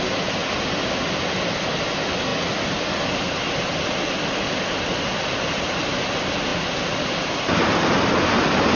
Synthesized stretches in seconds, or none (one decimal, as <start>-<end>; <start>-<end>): none